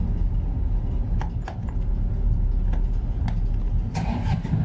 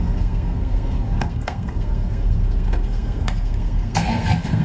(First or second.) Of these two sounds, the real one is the first